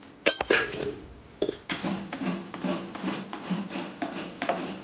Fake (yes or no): no